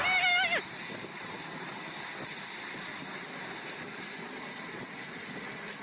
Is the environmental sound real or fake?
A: real